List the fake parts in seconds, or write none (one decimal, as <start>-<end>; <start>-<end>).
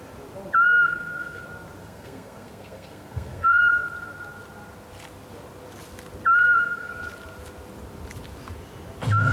0.8-1.4; 1.8-3.6; 6.4-6.9